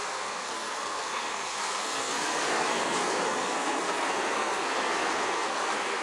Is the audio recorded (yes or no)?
no